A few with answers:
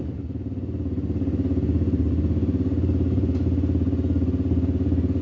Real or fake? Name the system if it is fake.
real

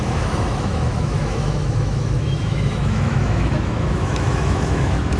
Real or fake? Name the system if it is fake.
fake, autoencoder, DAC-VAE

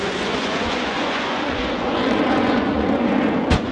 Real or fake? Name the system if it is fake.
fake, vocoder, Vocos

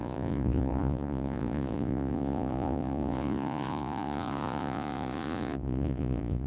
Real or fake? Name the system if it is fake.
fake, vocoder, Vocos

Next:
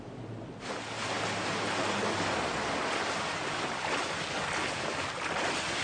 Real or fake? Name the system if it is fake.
real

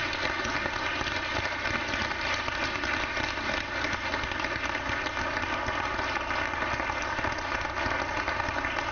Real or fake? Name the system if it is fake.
real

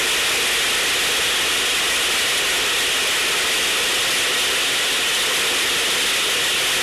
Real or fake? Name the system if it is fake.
real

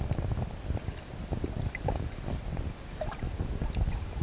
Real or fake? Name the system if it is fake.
real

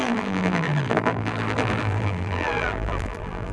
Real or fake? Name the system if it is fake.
fake, vocoder, BigVGAN v2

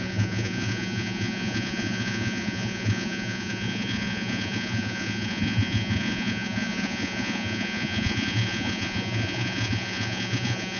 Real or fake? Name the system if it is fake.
fake, vocoder, Vocos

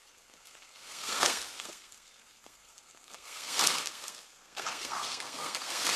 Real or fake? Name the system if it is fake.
fake, codec, SNAC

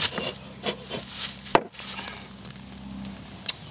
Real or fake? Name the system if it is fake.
real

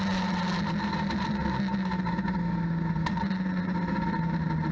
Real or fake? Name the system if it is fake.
real